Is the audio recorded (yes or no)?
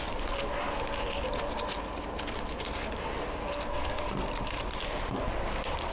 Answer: yes